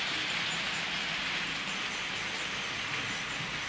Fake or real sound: real